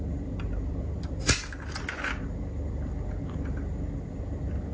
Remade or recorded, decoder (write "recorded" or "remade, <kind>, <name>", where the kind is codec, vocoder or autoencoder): recorded